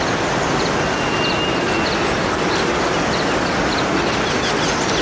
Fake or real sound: real